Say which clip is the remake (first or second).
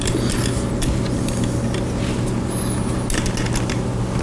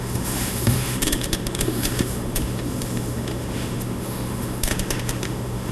second